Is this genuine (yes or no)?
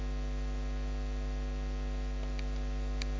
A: yes